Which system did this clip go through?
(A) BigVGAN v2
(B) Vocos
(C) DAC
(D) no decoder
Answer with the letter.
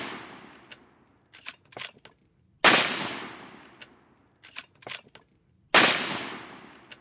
D